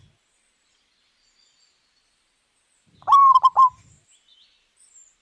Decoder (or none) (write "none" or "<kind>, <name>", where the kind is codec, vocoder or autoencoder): none